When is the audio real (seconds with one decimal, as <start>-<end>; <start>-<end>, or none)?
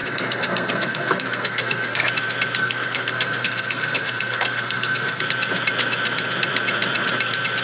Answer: 2.1-2.6; 5.2-7.6